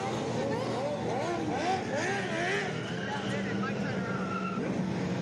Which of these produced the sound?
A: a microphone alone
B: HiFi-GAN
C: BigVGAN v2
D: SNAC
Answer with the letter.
A